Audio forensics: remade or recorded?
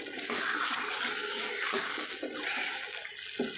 recorded